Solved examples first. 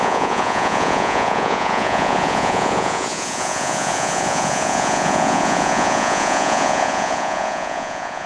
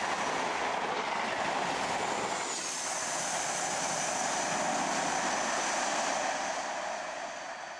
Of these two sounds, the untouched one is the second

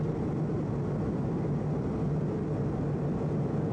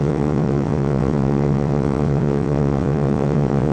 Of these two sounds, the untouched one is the first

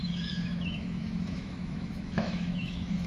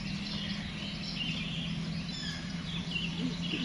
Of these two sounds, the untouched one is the second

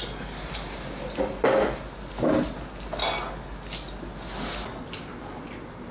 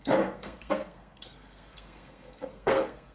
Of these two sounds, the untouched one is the first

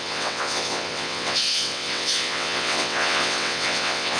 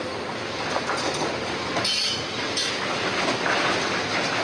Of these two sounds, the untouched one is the second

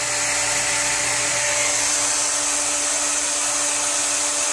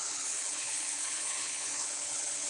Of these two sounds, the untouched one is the first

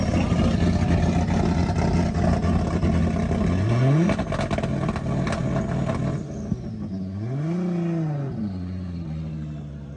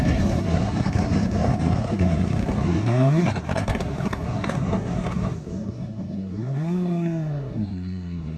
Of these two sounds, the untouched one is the first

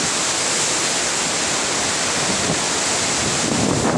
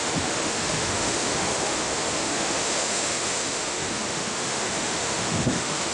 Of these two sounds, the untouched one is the first